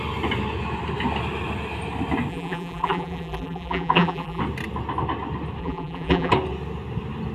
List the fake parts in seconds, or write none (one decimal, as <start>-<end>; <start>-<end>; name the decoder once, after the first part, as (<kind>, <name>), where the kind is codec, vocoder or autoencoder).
2.3-4.4 (vocoder, BigVGAN v2); 5.6-6.3